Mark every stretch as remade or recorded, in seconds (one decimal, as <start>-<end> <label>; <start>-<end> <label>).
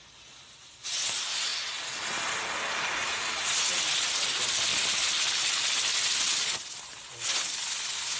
0.0-8.2 recorded